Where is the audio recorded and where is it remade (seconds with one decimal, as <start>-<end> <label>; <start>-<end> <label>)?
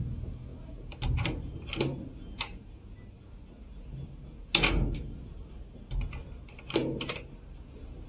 0.0-8.1 recorded